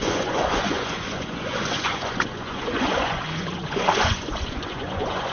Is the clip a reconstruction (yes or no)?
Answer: yes